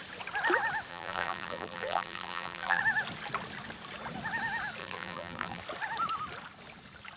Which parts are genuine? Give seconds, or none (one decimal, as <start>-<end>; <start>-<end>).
0.0-0.9; 2.8-4.8; 5.6-7.2